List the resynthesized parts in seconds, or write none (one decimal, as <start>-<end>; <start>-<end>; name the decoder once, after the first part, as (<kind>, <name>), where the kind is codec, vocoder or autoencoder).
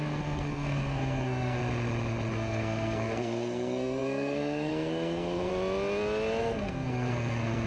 0.0-1.6 (codec, SNAC); 2.3-5.5; 6.4-7.7